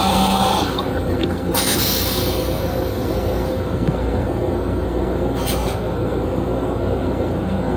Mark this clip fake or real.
fake